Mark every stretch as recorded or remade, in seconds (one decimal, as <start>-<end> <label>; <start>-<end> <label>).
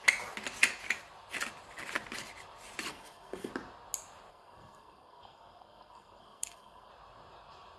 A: 0.0-2.9 recorded; 2.9-3.5 remade; 3.5-4.3 recorded; 4.3-6.9 remade; 6.9-7.8 recorded